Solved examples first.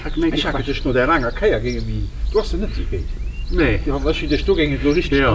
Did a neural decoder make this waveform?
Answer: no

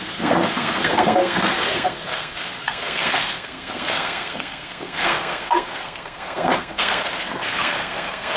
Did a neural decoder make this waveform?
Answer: yes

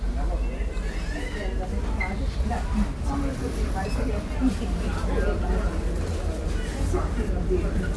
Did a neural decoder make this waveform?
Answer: no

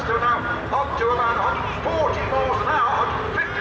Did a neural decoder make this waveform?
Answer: no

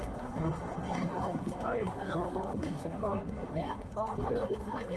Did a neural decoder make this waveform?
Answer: yes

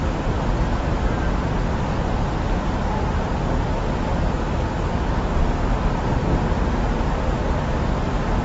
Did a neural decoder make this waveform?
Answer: no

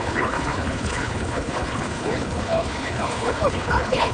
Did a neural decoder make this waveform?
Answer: yes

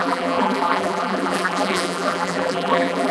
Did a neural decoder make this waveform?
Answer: yes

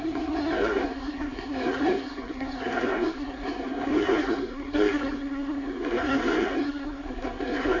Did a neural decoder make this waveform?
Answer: yes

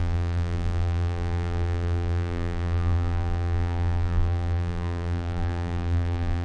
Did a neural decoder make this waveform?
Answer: yes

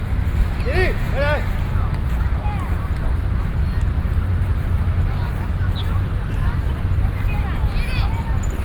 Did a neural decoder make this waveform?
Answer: no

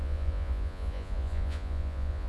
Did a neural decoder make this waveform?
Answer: yes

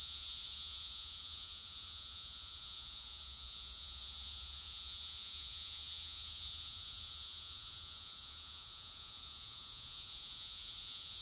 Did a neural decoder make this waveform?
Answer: yes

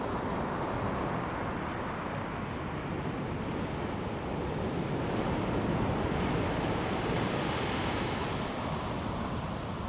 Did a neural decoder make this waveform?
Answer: no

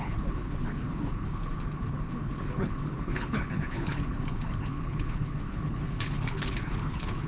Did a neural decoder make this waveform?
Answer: yes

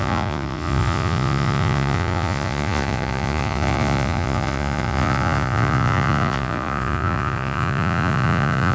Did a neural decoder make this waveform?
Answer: yes